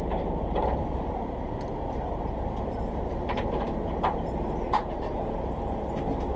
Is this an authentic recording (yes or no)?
no